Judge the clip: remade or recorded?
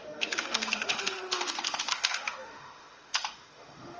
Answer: remade